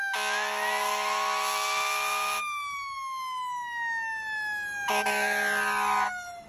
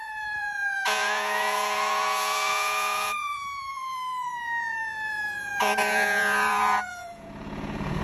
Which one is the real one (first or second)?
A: first